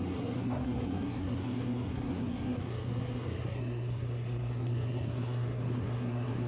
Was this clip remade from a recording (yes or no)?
yes